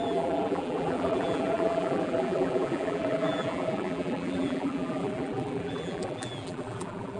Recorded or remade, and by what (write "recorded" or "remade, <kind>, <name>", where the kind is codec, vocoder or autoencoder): remade, vocoder, BigVGAN v2